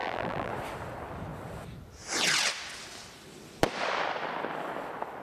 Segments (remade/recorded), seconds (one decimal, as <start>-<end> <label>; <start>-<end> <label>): 0.0-0.5 remade; 0.5-5.2 recorded